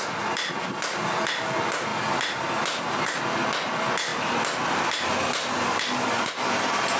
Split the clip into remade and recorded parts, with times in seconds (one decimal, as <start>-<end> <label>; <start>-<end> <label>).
0.0-7.0 recorded